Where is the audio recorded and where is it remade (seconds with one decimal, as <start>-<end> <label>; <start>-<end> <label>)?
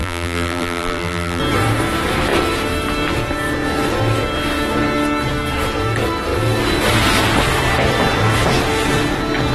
0.0-1.4 remade; 1.4-9.5 recorded